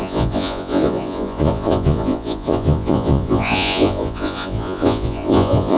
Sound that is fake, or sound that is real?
fake